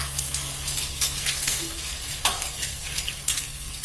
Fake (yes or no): yes